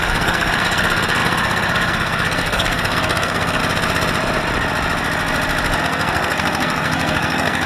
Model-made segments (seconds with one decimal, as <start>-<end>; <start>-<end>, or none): 0.0-3.6; 5.8-7.7